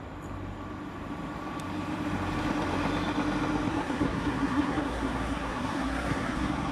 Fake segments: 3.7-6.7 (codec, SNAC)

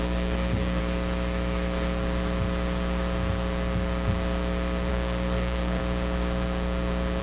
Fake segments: 0.0-0.8 (codec, SNAC); 4.9-5.8